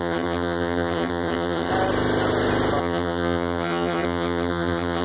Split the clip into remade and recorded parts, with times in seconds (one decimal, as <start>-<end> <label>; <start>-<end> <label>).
0.0-1.7 remade; 1.7-2.8 recorded; 2.8-5.0 remade